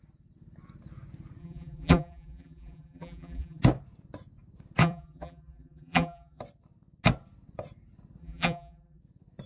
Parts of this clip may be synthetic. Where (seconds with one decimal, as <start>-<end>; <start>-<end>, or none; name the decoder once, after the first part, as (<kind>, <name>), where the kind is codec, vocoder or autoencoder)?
1.4-3.6 (vocoder, BigVGAN v2); 4.8-6.4; 8.2-9.0